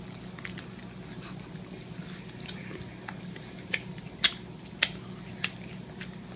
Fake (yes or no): no